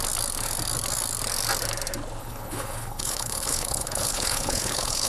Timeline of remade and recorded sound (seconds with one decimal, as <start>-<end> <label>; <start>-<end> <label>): 0.0-2.2 recorded; 2.2-5.1 remade